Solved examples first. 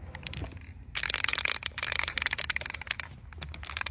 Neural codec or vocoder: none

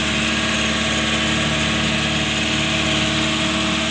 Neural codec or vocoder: none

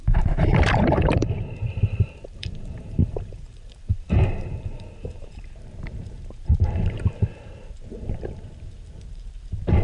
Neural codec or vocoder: vocoder, BigVGAN v2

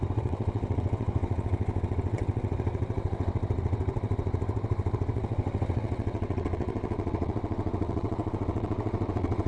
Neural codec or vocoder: vocoder, WaveNeXt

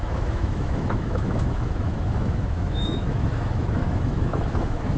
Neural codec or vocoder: autoencoder, DAC-VAE